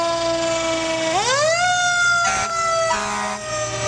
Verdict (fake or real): real